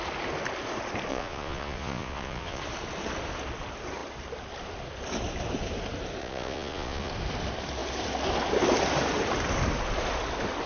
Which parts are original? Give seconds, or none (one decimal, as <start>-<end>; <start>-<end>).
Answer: 0.0-1.1; 2.6-6.2; 7.1-10.7